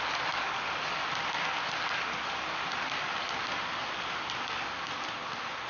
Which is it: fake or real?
real